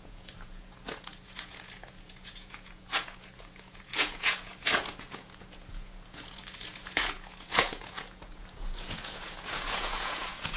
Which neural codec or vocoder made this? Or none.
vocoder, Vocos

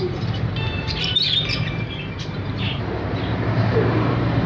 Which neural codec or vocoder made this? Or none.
vocoder, BigVGAN v2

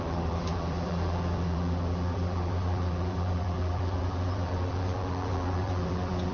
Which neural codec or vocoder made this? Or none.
vocoder, BigVGAN v2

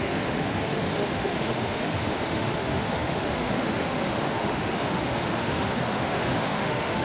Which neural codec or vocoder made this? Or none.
autoencoder, DAC-VAE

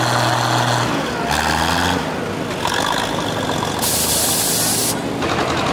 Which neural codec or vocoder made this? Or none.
none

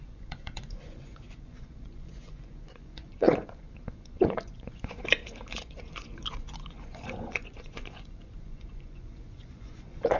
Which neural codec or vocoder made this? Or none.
vocoder, Vocos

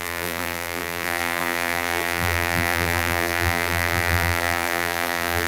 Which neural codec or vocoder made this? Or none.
vocoder, BigVGAN v2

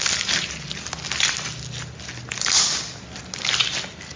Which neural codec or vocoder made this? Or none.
none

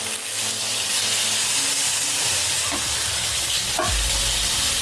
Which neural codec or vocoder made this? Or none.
none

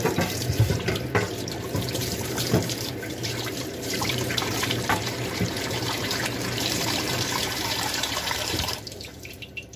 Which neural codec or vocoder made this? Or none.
vocoder, BigVGAN v2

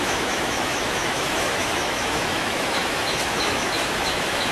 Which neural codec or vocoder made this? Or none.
autoencoder, DAC-VAE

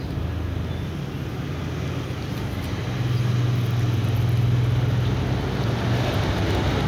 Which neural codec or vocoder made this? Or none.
none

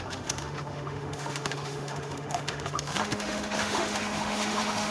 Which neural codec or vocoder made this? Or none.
autoencoder, DAC-VAE